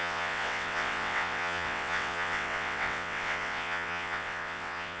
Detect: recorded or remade remade